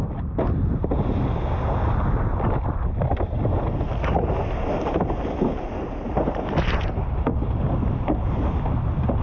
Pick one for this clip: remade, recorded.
recorded